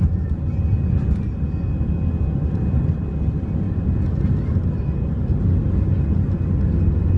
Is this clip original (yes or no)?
yes